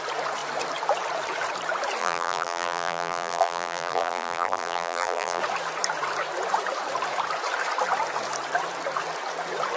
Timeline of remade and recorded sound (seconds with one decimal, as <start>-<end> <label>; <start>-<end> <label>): 0.0-2.0 recorded; 2.0-5.4 remade; 5.4-9.8 recorded